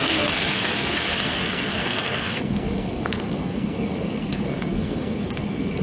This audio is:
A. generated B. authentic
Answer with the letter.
A